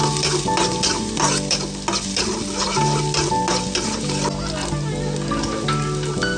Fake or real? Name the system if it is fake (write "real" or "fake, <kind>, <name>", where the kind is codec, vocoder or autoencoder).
real